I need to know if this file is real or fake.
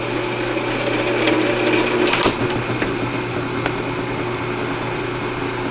real